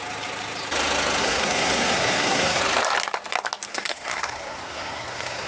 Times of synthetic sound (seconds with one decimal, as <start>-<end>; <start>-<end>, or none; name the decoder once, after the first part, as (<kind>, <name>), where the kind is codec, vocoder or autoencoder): 1.2-2.6 (codec, SNAC); 3.7-5.5